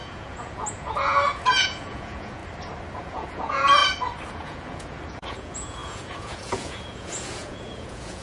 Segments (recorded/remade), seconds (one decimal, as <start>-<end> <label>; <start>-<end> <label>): 0.0-2.4 remade; 2.4-3.0 recorded; 3.0-3.8 remade; 3.8-4.3 recorded; 4.3-8.2 remade